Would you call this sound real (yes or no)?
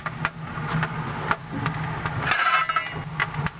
yes